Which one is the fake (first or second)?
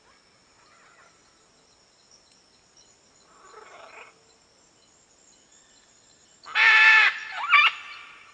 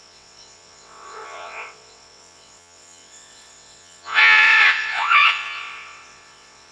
second